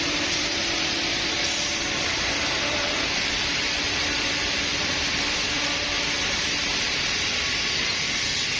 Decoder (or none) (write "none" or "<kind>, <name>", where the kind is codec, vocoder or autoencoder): vocoder, BigVGAN v2